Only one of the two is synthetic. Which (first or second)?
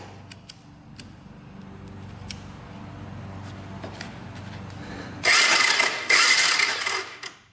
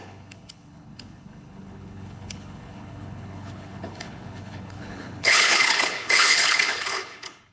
second